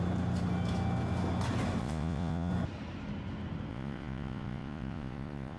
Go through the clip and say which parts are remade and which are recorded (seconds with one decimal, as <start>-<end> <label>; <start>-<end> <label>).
0.0-1.8 recorded; 1.8-2.5 remade; 2.5-3.7 recorded; 3.7-5.6 remade